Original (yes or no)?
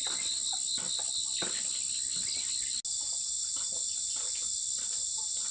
yes